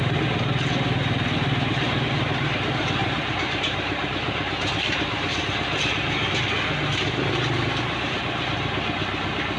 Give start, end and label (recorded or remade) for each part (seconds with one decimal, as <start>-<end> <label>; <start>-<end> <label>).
0.0-3.0 recorded; 3.0-5.4 remade; 5.4-9.6 recorded

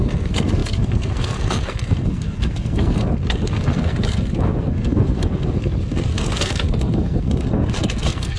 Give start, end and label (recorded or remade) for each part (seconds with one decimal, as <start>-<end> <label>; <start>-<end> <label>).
0.0-8.4 remade

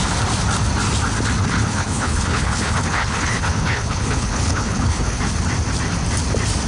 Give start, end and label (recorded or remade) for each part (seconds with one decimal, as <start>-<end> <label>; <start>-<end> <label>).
0.0-1.4 recorded; 1.4-5.2 remade; 5.2-6.7 recorded

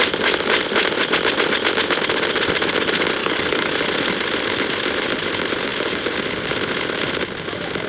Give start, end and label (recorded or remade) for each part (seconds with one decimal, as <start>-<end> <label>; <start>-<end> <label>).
0.0-3.2 recorded; 3.2-3.7 remade; 3.7-7.9 recorded

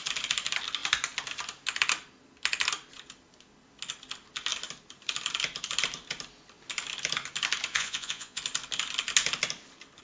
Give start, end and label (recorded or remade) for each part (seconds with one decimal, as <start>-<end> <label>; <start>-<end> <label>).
0.0-7.7 recorded; 7.7-8.4 remade; 8.4-10.0 recorded

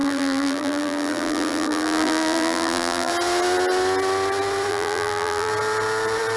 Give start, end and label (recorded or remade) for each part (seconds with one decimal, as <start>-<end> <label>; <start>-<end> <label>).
0.0-3.1 remade; 3.1-4.7 recorded; 4.7-5.5 remade; 5.5-6.4 recorded